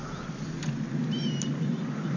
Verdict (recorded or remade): recorded